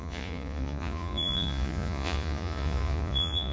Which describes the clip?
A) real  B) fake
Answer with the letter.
B